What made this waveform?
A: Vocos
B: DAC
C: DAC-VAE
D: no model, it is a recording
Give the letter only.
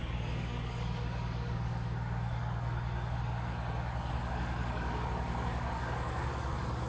B